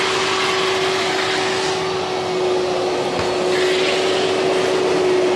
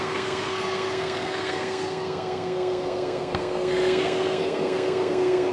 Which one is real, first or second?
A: first